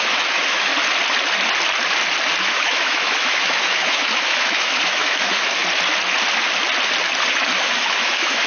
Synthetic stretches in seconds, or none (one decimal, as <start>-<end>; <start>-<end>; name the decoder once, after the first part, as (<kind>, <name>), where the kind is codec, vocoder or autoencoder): 0.0-0.7 (autoencoder, DAC-VAE); 2.4-5.6; 7.3-8.5